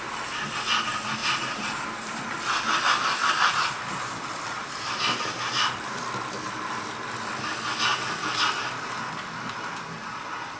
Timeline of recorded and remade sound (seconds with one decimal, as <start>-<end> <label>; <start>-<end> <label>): 0.0-1.2 recorded; 1.2-2.2 remade; 2.2-3.0 recorded; 3.0-5.9 remade; 5.9-10.6 recorded